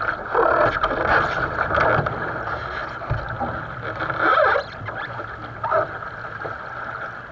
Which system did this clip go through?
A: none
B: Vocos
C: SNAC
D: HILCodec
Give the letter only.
A